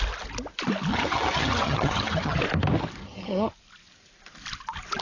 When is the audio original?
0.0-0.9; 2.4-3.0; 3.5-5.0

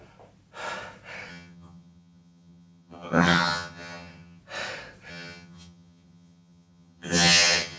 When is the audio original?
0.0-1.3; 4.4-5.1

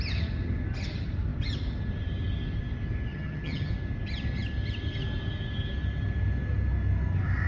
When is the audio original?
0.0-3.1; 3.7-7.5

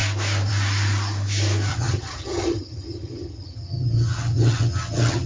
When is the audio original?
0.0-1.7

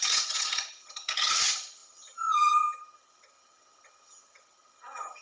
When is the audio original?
none

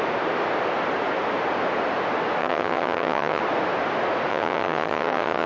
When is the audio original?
0.0-2.4; 3.4-4.3